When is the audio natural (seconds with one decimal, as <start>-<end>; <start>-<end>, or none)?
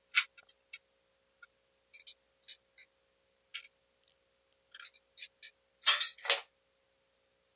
0.0-7.6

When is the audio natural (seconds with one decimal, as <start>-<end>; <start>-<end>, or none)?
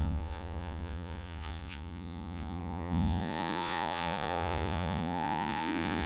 none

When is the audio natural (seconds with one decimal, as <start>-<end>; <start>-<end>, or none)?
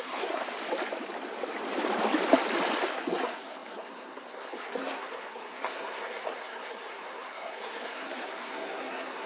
0.4-2.9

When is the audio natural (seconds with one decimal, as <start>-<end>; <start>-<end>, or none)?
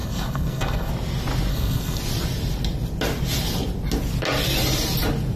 0.9-1.5; 2.0-5.4